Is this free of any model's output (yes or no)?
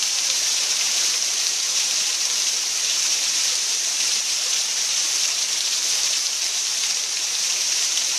no